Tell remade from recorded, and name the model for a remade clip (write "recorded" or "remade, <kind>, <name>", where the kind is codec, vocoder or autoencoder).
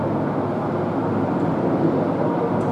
recorded